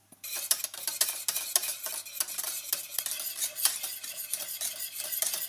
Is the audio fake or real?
real